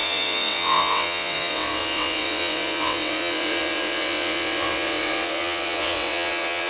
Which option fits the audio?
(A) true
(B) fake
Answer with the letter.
B